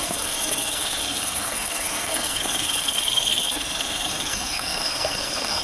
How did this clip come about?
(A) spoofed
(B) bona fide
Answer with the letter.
A